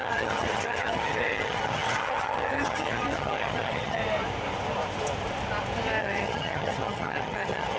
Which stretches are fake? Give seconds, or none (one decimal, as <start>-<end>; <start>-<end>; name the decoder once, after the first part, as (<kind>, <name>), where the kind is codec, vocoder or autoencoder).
0.0-4.0 (vocoder, HiFi-GAN); 6.0-7.8